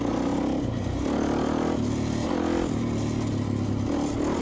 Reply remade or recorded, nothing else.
recorded